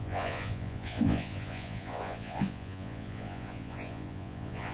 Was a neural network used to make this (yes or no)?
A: yes